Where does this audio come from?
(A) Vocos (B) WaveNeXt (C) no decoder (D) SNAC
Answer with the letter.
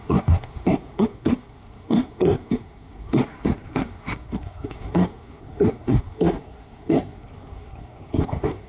D